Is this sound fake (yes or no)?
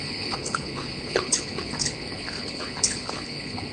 yes